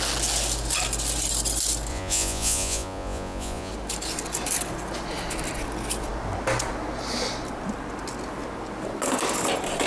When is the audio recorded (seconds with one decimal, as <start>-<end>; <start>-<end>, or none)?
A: 0.0-1.9; 3.7-9.9